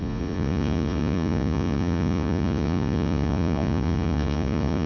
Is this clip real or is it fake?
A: fake